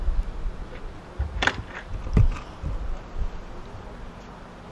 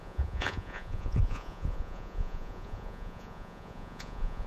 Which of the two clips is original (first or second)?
first